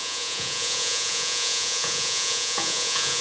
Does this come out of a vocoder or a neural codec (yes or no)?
yes